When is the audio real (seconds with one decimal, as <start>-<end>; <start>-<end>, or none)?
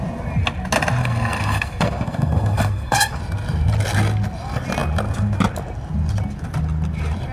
0.0-1.0; 3.2-7.3